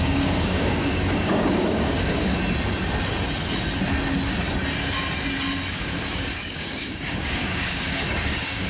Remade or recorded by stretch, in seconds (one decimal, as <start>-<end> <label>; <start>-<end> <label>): 0.0-2.4 remade; 2.4-5.7 recorded; 5.7-8.7 remade